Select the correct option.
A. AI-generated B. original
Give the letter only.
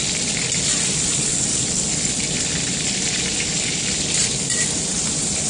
A